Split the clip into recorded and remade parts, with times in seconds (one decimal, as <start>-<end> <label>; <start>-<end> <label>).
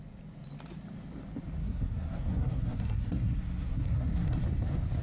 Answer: 0.0-1.6 recorded; 1.6-4.4 remade; 4.4-5.0 recorded